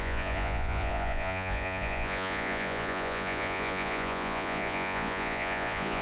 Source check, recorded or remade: remade